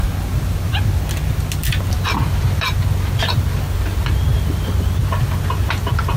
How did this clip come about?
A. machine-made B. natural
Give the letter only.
B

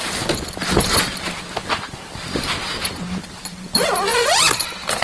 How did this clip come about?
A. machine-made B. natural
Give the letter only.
B